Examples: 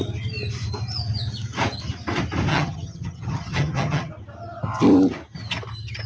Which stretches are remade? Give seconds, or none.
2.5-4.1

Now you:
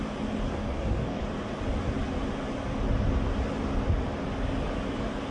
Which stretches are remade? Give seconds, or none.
0.5-1.2

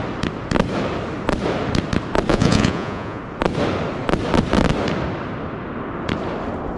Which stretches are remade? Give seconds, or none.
2.3-3.2

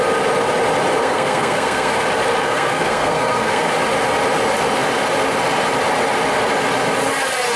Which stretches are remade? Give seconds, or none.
1.0-1.9; 2.4-3.7

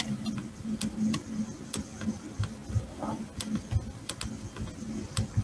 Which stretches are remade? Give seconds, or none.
none

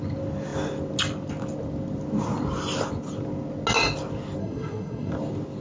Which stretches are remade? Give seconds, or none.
4.4-5.1

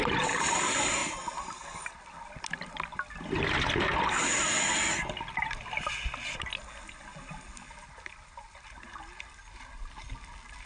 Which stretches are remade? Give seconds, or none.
none

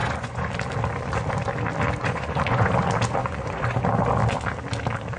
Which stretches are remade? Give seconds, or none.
0.0-0.5; 2.0-2.7; 3.2-3.8